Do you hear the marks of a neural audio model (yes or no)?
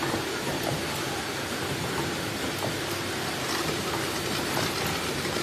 no